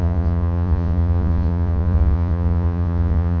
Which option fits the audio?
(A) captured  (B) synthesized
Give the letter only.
B